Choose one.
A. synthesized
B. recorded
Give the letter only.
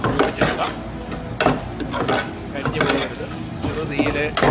B